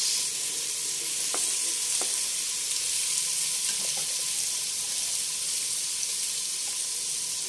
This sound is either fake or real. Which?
real